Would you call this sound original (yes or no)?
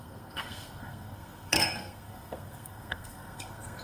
no